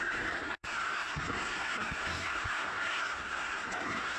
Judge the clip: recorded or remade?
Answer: remade